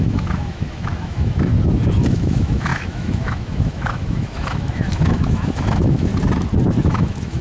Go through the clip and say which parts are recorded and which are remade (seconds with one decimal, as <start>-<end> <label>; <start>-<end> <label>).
0.0-1.5 remade; 1.5-2.1 recorded; 2.1-6.1 remade; 6.1-6.8 recorded; 6.8-7.4 remade